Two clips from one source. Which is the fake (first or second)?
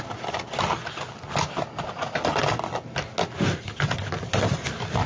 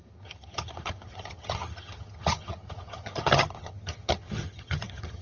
second